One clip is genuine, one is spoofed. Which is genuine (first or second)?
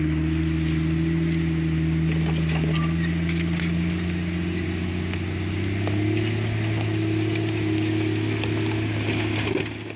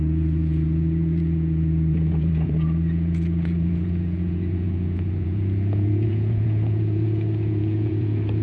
first